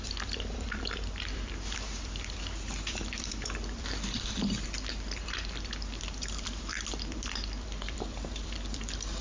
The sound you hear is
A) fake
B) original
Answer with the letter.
A